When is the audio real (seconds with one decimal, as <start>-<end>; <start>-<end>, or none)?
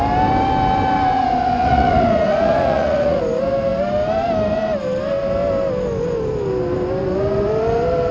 0.0-1.6; 3.2-8.1